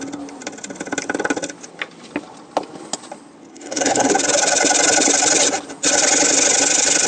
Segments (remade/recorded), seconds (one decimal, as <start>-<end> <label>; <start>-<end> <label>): 0.0-3.5 recorded; 3.5-4.1 remade; 4.1-7.1 recorded